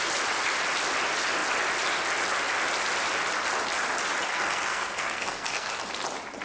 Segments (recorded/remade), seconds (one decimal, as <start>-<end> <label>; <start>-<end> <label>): 0.0-4.3 recorded; 4.3-5.7 remade; 5.7-6.4 recorded